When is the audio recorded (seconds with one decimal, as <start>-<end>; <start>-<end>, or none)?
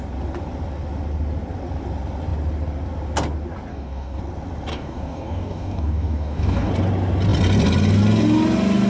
0.0-3.7; 4.2-4.7; 6.7-8.9